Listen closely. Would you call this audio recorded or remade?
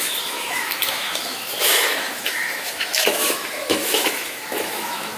remade